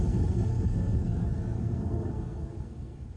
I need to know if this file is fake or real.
fake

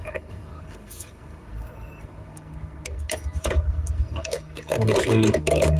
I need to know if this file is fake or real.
fake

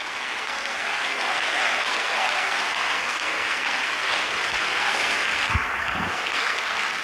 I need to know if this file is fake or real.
fake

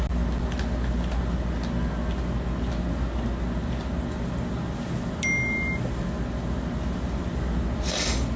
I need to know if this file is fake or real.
real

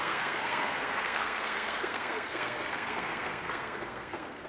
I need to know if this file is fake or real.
fake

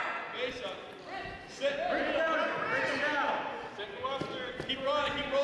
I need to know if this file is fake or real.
real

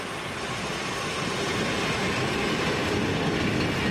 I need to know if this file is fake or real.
real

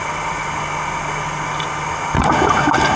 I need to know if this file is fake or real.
real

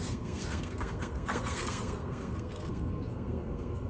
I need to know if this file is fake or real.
fake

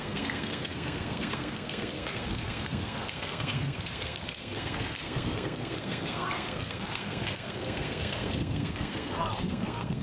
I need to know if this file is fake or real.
fake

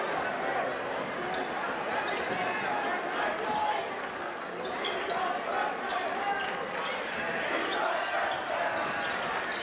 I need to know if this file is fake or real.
real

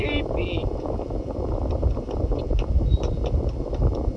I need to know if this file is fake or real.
real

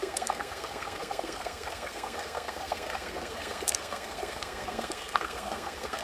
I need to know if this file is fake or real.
fake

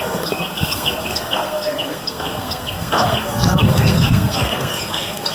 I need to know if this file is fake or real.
fake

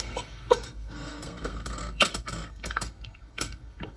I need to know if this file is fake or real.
fake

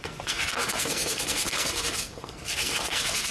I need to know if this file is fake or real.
fake